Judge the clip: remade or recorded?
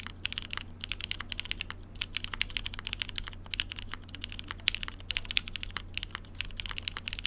recorded